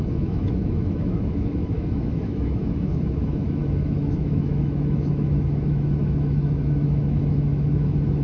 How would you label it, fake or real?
fake